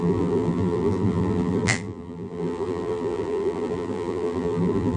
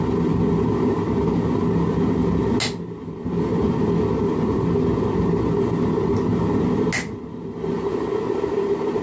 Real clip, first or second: second